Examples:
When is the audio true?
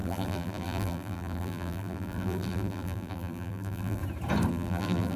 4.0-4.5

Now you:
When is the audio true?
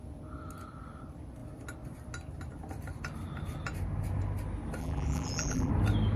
0.0-4.8; 5.7-6.2